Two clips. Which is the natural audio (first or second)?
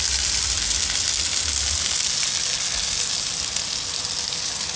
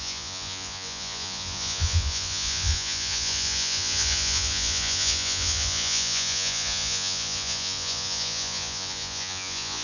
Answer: first